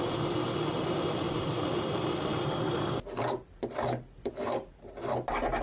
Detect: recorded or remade recorded